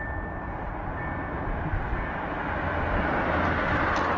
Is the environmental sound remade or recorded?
recorded